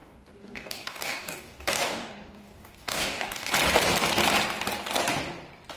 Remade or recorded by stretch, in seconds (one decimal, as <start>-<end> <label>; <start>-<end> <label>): 0.0-3.5 remade; 3.5-5.8 recorded